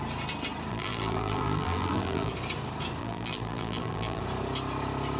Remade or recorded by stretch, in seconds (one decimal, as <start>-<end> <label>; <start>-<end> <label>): 0.0-0.7 recorded; 0.7-2.3 remade; 2.3-3.0 recorded; 3.0-4.2 remade; 4.2-5.2 recorded